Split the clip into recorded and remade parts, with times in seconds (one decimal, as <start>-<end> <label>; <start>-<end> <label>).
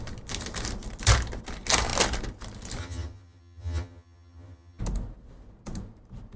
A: 0.0-2.8 recorded; 2.8-4.8 remade; 4.8-6.4 recorded